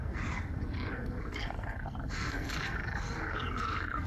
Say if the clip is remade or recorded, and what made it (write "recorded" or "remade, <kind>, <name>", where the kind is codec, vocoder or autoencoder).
remade, codec, SNAC